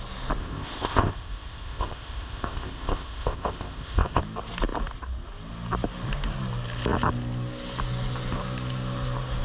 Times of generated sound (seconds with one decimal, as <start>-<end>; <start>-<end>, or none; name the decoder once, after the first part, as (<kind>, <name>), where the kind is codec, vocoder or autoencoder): 0.4-4.2 (codec, ZipCodec)